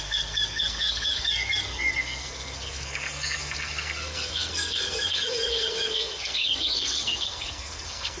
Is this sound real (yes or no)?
no